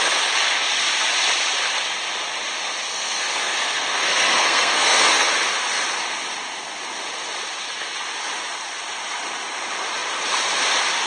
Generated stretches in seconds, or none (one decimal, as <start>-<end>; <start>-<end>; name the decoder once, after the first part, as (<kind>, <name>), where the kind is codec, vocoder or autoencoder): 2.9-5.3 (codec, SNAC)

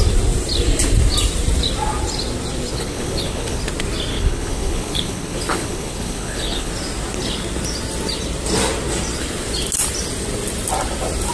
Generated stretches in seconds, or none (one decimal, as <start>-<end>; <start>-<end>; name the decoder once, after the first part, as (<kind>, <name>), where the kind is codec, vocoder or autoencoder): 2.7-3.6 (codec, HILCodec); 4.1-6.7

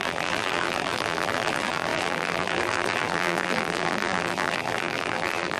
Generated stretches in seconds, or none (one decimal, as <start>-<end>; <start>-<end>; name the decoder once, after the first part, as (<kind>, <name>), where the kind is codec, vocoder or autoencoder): 0.0-5.6 (vocoder, BigVGAN v2)